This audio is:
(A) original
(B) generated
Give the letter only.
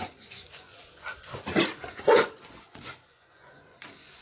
B